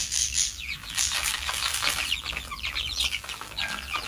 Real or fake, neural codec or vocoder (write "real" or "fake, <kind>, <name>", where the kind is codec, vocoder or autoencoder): fake, vocoder, BigVGAN v2